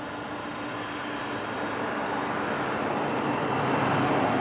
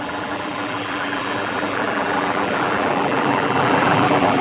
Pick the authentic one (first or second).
first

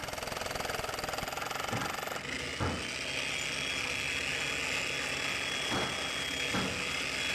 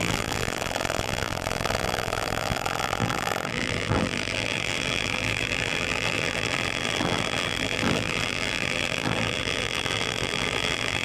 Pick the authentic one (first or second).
first